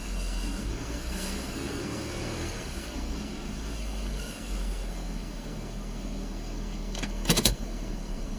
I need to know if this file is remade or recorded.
remade